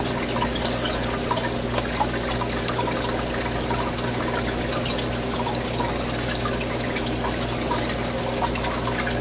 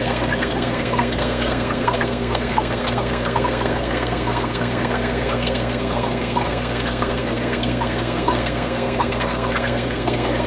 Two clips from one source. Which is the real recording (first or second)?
first